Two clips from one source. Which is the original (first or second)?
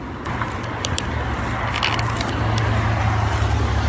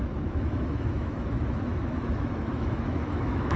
first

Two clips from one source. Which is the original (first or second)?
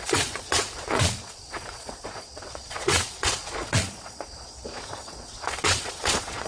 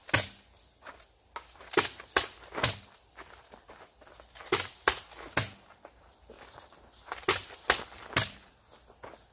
second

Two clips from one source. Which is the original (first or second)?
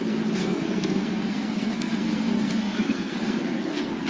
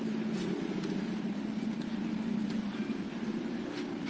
second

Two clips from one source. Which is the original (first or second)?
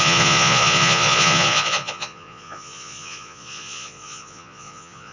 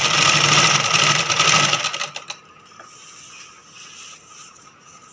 second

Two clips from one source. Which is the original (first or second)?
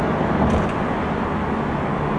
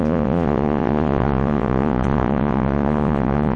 first